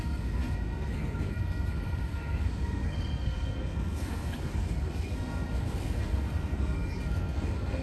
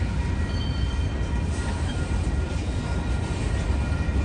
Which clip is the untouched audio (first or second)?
second